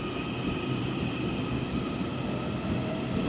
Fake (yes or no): no